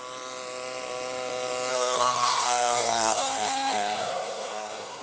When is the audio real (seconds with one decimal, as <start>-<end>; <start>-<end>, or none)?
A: 0.0-1.7